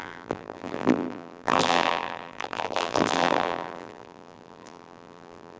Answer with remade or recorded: remade